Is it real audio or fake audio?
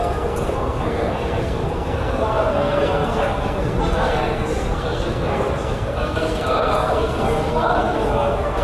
fake